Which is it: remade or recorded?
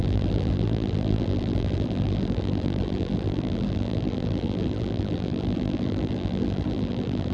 remade